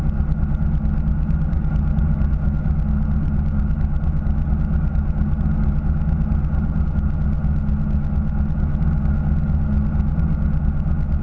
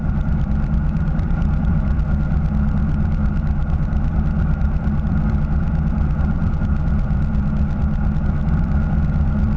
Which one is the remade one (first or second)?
second